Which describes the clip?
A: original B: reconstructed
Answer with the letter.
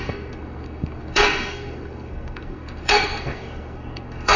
B